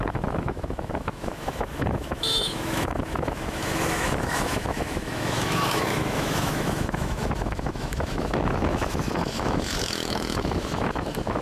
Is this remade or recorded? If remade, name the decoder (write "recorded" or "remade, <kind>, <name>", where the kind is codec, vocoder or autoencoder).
remade, autoencoder, DAC-VAE